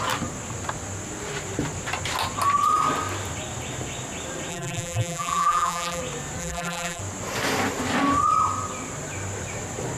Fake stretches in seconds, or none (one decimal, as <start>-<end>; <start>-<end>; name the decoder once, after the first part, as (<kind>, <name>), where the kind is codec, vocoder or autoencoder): 4.5-6.0 (vocoder, BigVGAN v2); 6.4-7.0